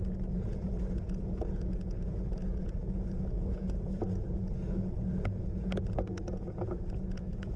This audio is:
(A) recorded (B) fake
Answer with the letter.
B